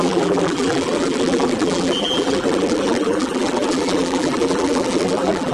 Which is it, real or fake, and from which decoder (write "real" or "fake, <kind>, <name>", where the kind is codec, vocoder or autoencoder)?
fake, vocoder, BigVGAN v2